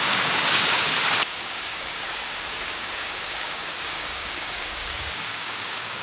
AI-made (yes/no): yes